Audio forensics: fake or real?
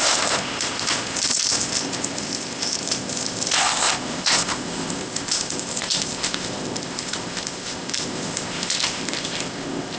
fake